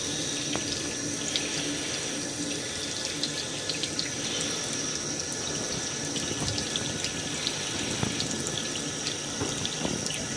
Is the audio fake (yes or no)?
no